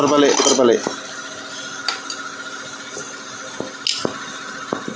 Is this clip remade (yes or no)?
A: no